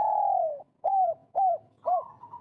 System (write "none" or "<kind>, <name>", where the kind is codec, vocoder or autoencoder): vocoder, Vocos